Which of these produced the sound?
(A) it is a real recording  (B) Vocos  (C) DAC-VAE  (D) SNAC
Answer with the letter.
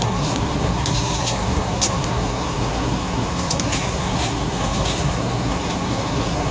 D